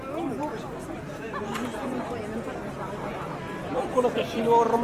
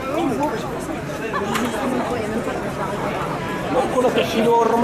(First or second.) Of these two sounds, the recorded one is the first